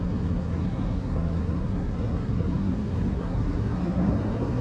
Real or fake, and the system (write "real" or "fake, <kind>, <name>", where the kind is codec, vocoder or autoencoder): fake, codec, SNAC